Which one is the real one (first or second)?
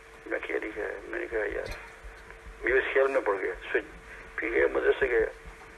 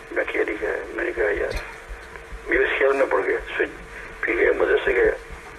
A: first